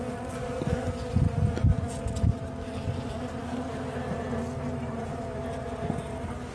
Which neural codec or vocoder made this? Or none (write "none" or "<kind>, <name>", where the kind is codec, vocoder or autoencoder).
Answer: none